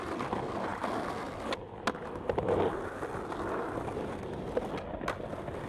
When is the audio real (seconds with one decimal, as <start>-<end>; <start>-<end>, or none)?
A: 0.0-5.7